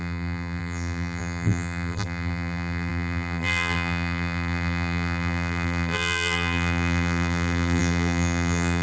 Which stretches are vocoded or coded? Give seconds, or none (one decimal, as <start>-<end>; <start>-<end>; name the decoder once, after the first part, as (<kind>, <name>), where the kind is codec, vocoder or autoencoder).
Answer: 0.0-8.8 (vocoder, BigVGAN v2)